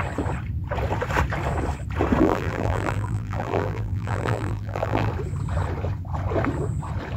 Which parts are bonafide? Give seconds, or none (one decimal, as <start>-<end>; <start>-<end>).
0.0-2.2; 5.1-7.2